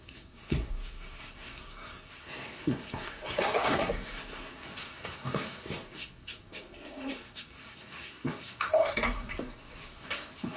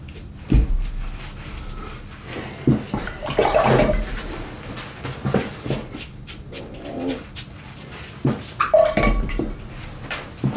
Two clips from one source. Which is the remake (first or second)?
first